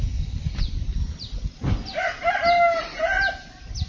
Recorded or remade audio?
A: recorded